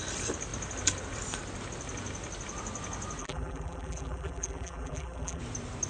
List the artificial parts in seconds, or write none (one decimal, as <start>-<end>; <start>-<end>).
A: 3.2-5.4